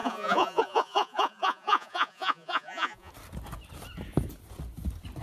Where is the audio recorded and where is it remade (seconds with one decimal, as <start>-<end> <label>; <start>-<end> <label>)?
0.0-3.1 remade; 3.1-5.2 recorded